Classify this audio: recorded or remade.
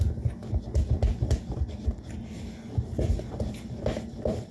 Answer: recorded